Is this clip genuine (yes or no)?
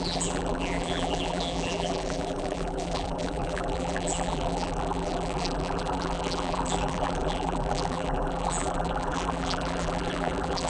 no